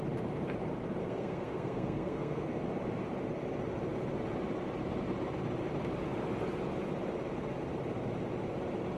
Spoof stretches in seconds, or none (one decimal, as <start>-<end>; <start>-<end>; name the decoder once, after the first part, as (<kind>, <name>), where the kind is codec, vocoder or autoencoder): 1.0-2.6 (codec, SNAC)